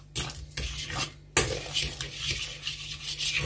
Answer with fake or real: real